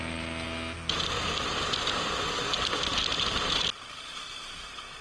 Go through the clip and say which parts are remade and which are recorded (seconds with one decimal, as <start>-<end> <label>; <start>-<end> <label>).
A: 0.0-5.0 recorded